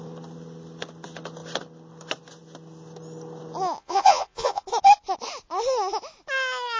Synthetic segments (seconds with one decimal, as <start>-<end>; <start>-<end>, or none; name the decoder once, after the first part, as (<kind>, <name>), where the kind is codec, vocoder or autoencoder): 3.8-4.6 (vocoder, Vocos)